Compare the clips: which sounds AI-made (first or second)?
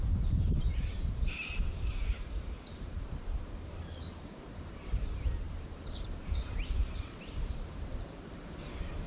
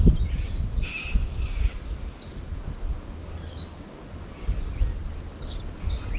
first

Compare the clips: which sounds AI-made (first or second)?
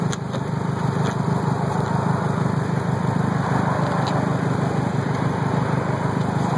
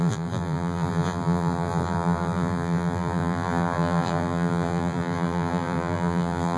second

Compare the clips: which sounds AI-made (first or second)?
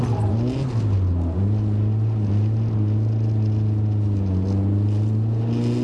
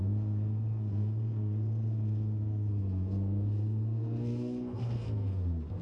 second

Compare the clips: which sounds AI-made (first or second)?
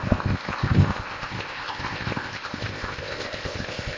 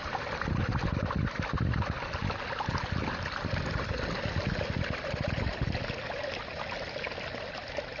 first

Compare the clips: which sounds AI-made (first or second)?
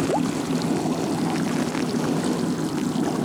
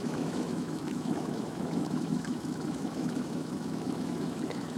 second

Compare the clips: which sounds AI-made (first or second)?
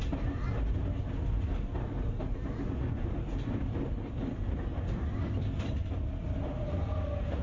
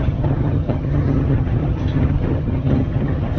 second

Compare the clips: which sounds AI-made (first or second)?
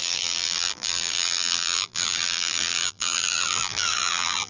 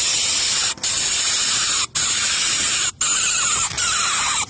first